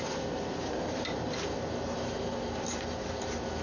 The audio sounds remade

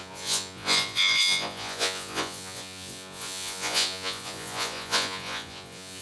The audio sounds remade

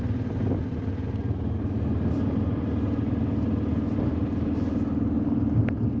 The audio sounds recorded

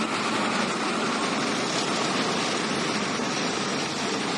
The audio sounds recorded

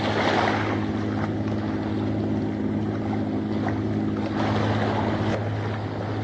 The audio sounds recorded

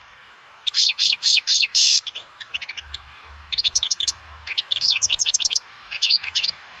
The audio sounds remade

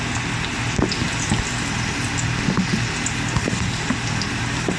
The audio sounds recorded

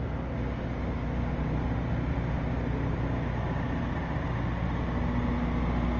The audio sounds recorded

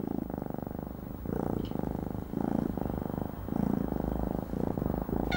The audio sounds recorded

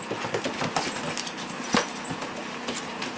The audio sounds recorded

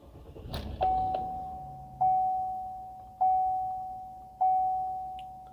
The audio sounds recorded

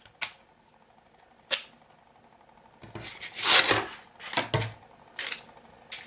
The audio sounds recorded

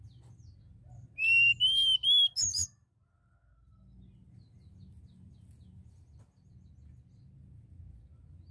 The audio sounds recorded